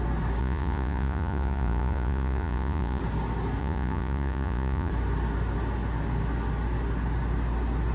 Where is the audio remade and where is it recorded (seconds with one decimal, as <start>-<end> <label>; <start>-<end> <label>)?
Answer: 0.0-0.4 recorded; 0.4-3.0 remade; 3.0-3.6 recorded; 3.6-4.9 remade; 4.9-7.9 recorded